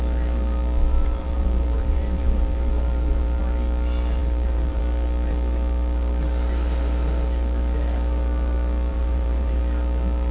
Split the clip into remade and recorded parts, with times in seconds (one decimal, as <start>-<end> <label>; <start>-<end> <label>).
0.0-0.8 recorded; 0.8-3.4 remade; 3.4-4.2 recorded; 4.2-4.8 remade; 4.8-8.9 recorded; 8.9-9.6 remade; 9.6-10.3 recorded